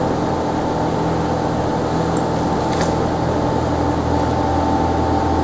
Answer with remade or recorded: recorded